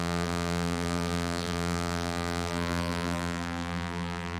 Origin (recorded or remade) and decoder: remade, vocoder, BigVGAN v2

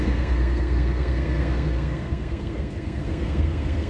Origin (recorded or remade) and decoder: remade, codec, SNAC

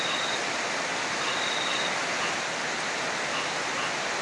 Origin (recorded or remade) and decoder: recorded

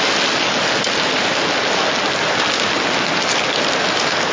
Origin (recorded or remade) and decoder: recorded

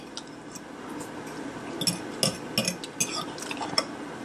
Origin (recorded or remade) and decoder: recorded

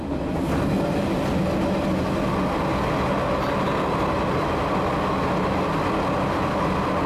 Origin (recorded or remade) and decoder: recorded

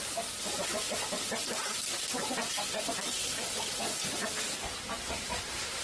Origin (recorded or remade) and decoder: recorded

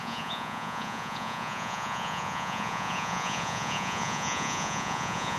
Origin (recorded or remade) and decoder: remade, vocoder, Vocos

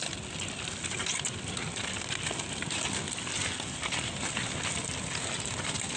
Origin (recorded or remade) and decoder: recorded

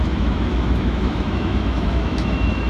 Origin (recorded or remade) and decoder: remade, autoencoder, DAC-VAE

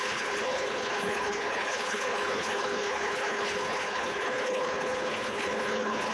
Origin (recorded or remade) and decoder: remade, codec, HILCodec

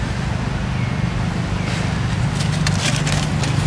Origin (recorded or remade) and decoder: recorded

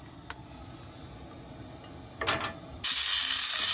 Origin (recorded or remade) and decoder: recorded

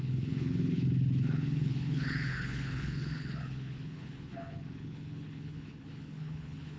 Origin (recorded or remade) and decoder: remade, codec, HILCodec